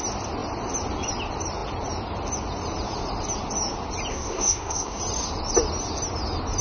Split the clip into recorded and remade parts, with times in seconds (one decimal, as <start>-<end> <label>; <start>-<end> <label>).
0.0-4.1 recorded; 4.1-5.0 remade; 5.0-6.6 recorded